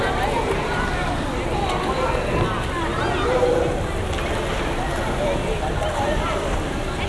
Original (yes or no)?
yes